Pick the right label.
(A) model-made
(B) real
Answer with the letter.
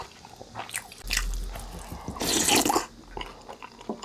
B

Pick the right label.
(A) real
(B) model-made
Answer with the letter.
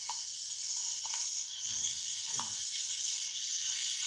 B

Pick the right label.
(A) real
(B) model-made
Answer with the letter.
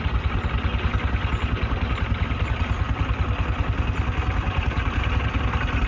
A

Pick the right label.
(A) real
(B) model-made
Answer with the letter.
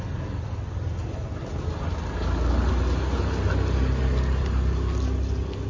A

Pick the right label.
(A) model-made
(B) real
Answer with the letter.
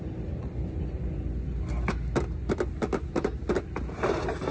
B